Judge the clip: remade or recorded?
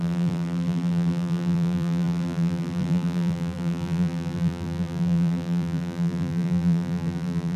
remade